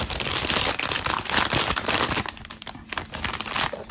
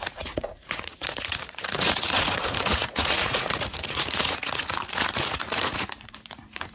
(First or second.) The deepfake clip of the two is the second